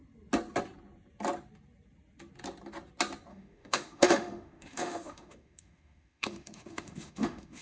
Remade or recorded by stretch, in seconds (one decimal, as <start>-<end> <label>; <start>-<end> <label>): 0.0-3.3 recorded; 3.3-7.6 remade